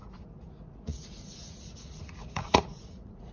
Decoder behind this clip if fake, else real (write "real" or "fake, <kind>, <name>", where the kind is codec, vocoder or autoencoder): fake, vocoder, Vocos